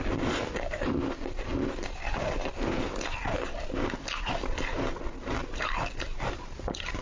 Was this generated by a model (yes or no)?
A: no